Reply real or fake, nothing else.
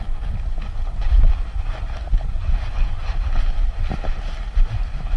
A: real